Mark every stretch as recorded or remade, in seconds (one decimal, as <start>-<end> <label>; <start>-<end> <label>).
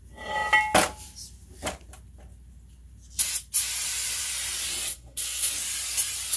0.0-4.9 recorded; 4.9-5.5 remade; 5.5-6.4 recorded